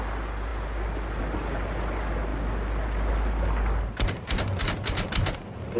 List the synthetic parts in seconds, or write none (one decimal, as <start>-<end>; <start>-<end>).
none